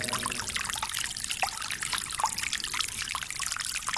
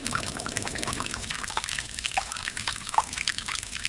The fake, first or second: second